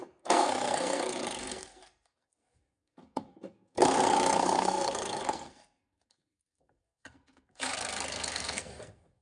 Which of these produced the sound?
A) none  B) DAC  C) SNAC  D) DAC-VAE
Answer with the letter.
C